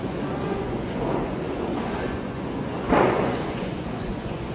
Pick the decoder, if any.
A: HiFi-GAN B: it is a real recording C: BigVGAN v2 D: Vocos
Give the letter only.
D